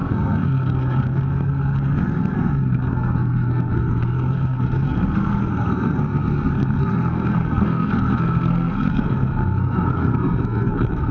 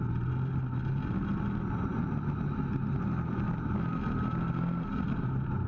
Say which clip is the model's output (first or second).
first